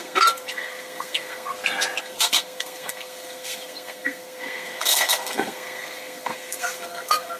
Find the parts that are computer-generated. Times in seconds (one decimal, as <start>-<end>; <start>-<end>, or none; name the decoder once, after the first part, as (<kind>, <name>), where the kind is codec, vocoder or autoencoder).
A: 0.0-1.5 (codec, SNAC); 2.0-7.4